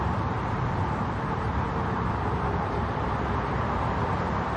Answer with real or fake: fake